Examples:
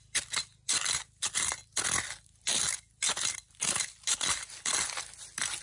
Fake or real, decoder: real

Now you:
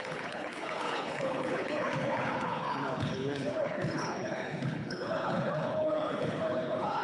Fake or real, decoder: fake, codec, HILCodec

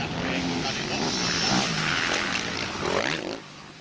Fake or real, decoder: real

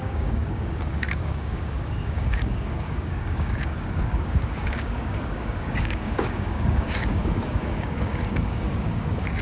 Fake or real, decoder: fake, codec, DAC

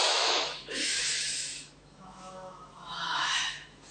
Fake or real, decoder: fake, autoencoder, DAC-VAE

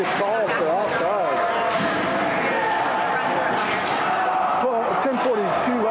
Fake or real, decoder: real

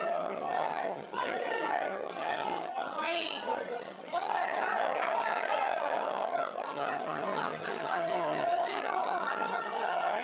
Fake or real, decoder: fake, vocoder, HiFi-GAN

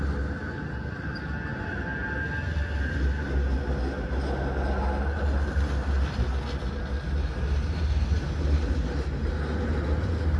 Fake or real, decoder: real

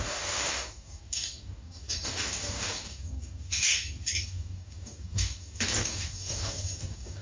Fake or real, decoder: fake, codec, DAC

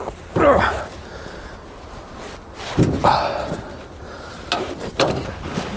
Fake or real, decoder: real